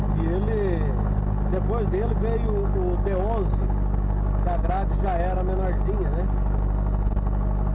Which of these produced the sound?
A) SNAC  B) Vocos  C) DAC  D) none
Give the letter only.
D